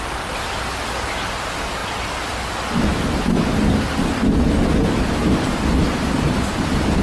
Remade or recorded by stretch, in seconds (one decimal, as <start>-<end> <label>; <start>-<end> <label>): 0.0-7.0 recorded